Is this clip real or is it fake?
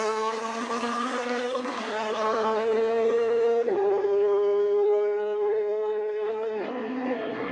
fake